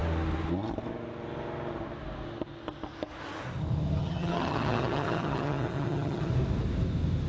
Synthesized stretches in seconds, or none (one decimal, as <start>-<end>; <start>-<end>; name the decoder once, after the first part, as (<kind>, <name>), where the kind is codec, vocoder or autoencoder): 4.0-6.3 (vocoder, HiFi-GAN)